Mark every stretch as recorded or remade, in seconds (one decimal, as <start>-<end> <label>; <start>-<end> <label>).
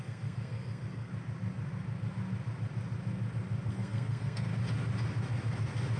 0.0-1.1 remade; 1.1-3.7 recorded; 3.7-4.5 remade; 4.5-6.0 recorded